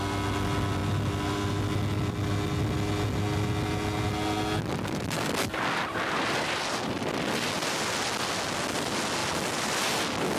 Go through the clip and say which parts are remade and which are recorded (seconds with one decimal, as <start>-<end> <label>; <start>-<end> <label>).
0.0-10.4 recorded